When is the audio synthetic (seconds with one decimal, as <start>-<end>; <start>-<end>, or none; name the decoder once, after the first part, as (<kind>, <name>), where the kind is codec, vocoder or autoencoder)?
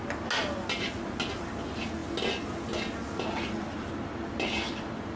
none